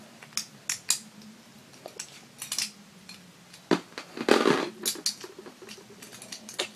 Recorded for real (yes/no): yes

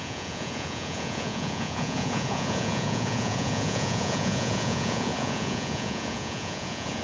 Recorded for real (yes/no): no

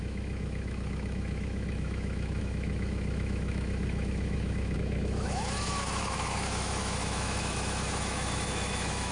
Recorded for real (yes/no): no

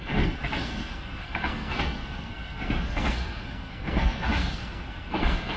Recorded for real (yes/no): no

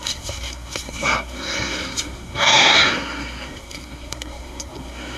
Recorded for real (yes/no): no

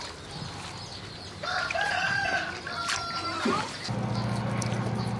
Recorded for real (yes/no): yes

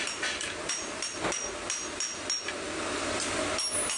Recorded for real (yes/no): yes